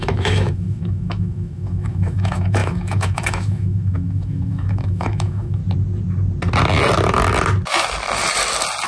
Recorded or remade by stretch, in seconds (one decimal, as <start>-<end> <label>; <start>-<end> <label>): 0.0-5.6 remade; 5.6-8.9 recorded